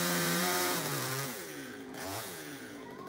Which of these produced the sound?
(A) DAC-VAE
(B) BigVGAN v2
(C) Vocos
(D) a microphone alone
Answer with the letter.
C